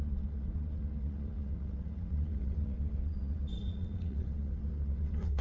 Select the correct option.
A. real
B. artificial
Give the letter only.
B